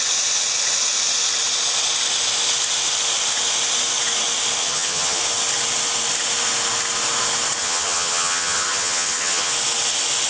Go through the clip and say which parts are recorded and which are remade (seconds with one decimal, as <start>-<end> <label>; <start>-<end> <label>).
0.0-4.6 recorded; 4.6-5.2 remade; 5.2-7.6 recorded; 7.6-9.5 remade; 9.5-10.3 recorded